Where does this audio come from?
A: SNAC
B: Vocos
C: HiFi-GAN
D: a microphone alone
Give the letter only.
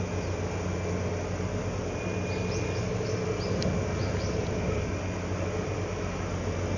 D